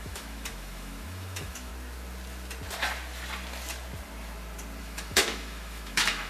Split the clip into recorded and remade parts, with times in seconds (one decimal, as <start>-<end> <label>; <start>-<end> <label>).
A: 0.0-1.7 remade; 1.7-4.8 recorded; 4.8-6.3 remade